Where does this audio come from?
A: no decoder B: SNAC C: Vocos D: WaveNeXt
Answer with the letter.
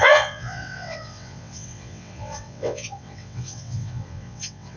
D